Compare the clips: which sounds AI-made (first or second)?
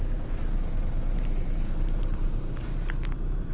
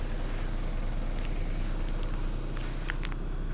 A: first